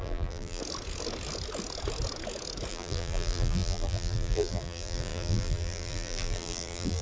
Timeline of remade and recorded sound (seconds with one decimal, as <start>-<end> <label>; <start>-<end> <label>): 0.0-0.6 remade; 0.6-2.7 recorded; 2.7-7.0 remade